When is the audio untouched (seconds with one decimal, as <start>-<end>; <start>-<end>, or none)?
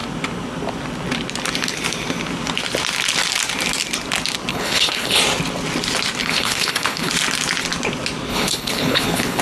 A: 0.0-4.5; 5.2-6.2; 7.1-8.3